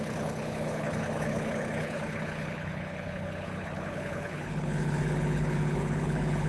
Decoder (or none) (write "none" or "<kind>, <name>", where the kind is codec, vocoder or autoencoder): codec, HILCodec